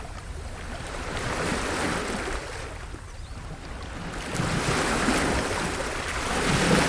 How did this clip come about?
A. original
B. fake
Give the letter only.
A